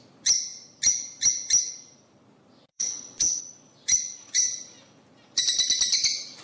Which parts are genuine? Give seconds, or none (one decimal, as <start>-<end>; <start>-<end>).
0.0-2.7; 3.4-6.4